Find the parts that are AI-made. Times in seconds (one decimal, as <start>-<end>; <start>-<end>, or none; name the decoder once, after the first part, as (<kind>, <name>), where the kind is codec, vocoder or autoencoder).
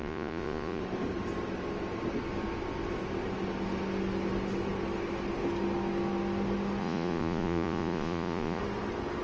0.0-0.8 (vocoder, Vocos); 6.8-8.6